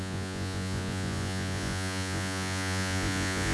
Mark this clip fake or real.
fake